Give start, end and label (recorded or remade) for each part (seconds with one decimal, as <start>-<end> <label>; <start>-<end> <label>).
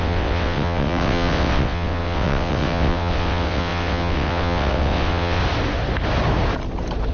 0.0-5.4 remade; 5.4-7.1 recorded